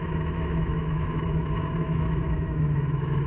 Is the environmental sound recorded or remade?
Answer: remade